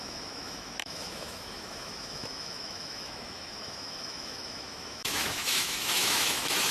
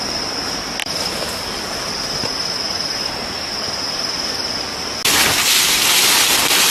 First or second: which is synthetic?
first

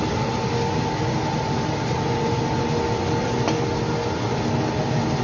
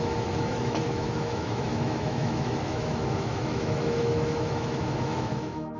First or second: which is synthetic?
second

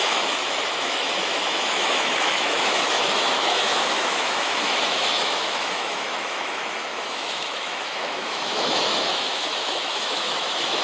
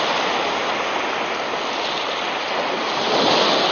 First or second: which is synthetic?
first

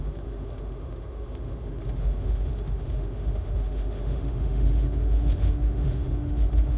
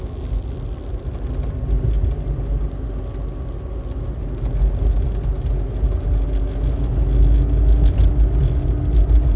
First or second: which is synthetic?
first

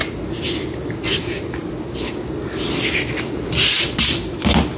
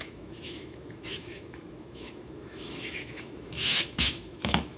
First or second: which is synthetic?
second